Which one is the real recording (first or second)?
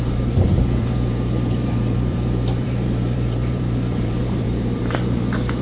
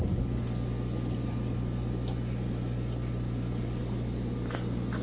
second